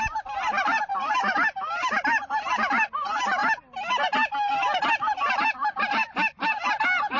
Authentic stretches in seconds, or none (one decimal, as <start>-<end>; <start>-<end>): 0.0-7.2